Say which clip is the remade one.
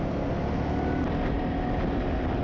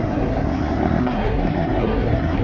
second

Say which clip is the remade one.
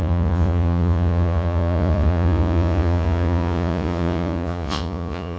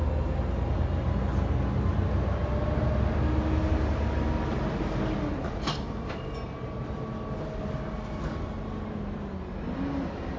first